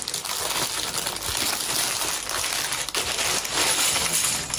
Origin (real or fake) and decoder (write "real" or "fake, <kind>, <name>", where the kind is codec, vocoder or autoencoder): real